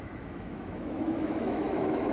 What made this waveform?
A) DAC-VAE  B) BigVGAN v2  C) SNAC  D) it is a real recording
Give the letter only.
A